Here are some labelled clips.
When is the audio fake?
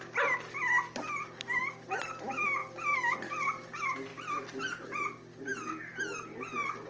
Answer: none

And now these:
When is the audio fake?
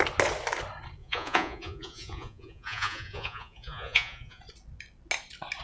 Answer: 1.0-4.4 (vocoder, Vocos)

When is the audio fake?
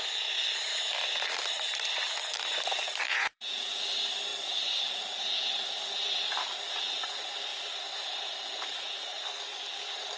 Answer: 3.1-3.8 (vocoder, Vocos)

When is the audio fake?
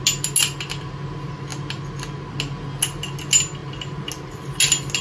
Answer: none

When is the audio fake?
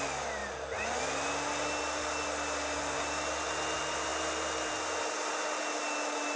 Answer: none